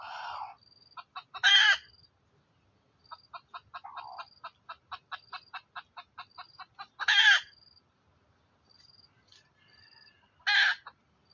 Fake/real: real